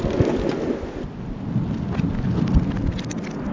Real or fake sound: real